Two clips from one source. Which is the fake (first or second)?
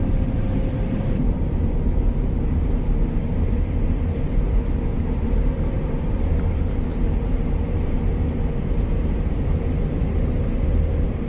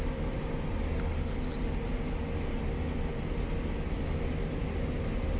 first